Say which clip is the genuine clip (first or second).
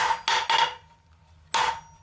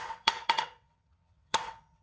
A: first